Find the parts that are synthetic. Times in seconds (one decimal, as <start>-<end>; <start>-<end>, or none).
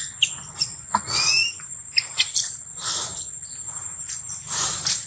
0.6-1.6